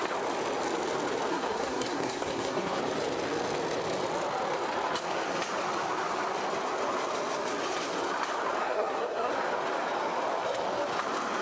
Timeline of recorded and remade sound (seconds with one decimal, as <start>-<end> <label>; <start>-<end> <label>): 0.0-1.3 recorded; 1.3-2.8 remade; 2.8-8.6 recorded; 8.6-9.3 remade; 9.3-11.4 recorded

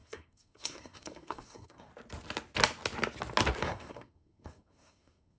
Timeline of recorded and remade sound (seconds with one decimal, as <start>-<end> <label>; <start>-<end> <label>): 0.0-1.9 remade; 1.9-3.6 recorded; 3.6-5.4 remade

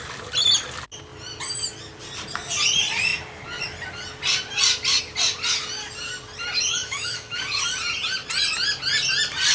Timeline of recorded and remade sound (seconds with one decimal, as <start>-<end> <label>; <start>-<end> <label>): 0.0-6.8 recorded; 6.8-7.4 remade; 7.4-9.5 recorded

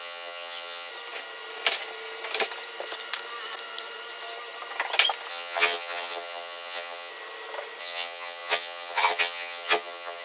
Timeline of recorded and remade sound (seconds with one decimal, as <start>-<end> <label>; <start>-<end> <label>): 0.0-0.9 remade; 0.9-5.3 recorded; 5.3-7.1 remade; 7.1-7.8 recorded; 7.8-10.2 remade

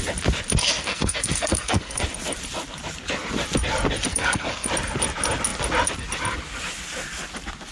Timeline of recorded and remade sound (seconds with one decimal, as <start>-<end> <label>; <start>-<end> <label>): 0.0-0.6 recorded; 0.6-2.0 remade; 2.0-4.1 recorded; 4.1-4.7 remade; 4.7-7.7 recorded